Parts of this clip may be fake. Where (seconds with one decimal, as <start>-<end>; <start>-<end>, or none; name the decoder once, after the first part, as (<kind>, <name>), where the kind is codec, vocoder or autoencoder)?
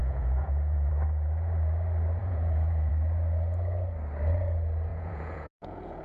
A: 0.0-0.9 (vocoder, Vocos); 2.2-2.9; 4.9-6.0